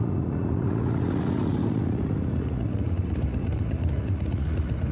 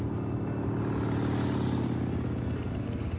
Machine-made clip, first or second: first